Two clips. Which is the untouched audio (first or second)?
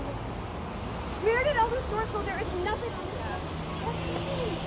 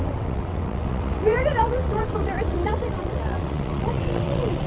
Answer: first